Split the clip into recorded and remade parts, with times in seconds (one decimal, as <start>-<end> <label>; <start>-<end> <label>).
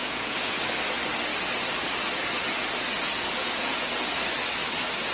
0.0-0.6 remade; 0.6-3.4 recorded; 3.4-4.1 remade; 4.1-5.1 recorded